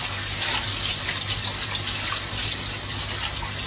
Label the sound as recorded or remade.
recorded